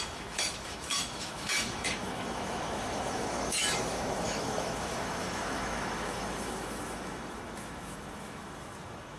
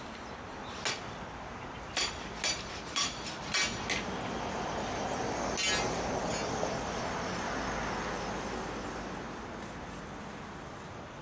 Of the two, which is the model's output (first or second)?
first